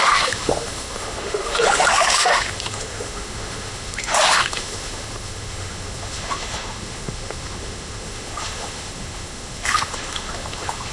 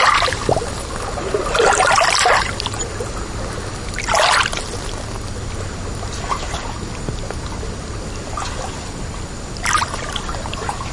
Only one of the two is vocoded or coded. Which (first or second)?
first